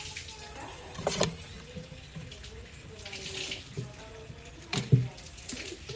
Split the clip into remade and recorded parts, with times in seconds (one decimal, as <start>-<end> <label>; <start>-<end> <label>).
0.0-6.0 recorded